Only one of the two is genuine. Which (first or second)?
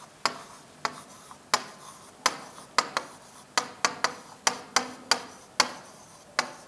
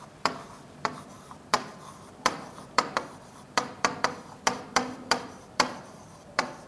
first